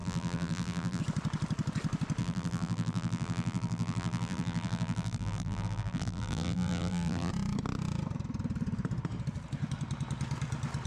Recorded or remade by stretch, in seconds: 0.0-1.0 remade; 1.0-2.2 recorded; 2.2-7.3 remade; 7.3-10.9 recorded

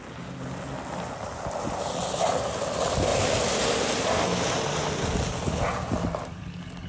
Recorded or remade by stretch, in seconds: 0.0-3.1 recorded; 3.1-4.5 remade; 4.5-6.9 recorded